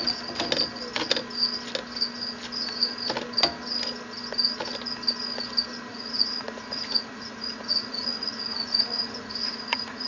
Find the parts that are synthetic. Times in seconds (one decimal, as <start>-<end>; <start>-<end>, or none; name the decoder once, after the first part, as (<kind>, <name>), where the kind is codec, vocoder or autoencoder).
5.9-10.1 (vocoder, Vocos)